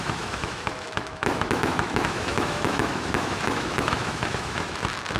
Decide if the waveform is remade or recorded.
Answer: remade